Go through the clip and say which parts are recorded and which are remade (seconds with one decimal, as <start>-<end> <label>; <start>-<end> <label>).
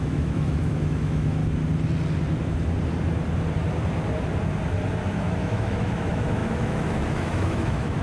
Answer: 0.0-1.4 remade; 1.4-5.1 recorded; 5.1-8.0 remade